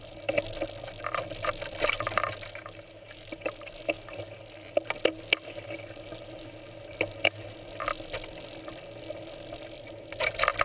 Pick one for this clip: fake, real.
real